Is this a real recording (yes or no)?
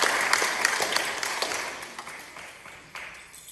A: no